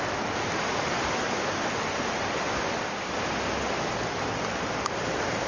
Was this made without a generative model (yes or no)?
yes